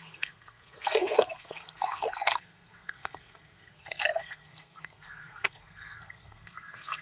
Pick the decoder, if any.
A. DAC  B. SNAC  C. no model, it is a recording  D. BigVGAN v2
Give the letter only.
B